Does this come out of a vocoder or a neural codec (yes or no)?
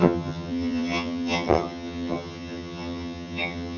yes